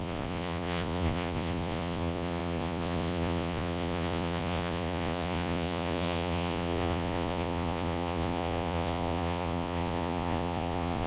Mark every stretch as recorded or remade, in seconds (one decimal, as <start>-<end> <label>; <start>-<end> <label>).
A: 0.0-11.1 remade